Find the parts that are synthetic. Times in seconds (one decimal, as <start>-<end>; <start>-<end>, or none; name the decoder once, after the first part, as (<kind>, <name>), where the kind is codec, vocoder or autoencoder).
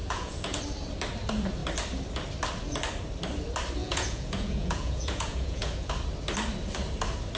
0.0-0.6 (vocoder, Vocos); 3.8-5.9